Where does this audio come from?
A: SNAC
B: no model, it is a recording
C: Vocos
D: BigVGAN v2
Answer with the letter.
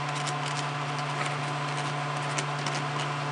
B